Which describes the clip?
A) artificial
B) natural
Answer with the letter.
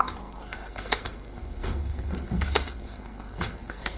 A